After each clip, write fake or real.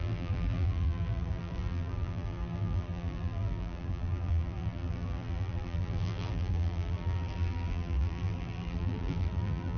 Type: fake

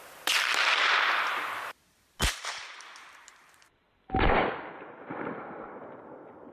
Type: real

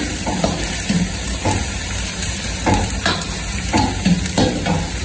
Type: fake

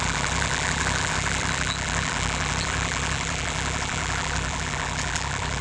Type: fake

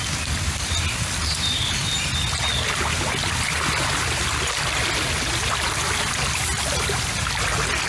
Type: real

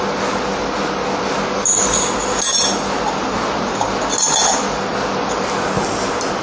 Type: real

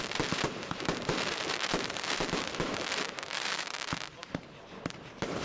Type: fake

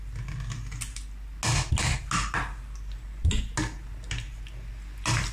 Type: real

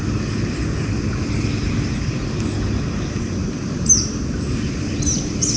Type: real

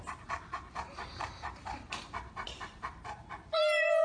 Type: fake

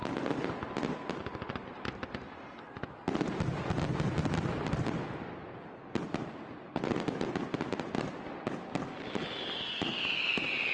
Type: real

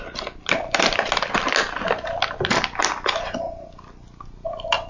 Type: real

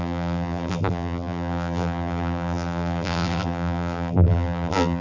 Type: fake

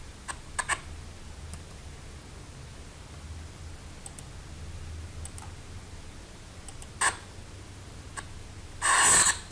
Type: real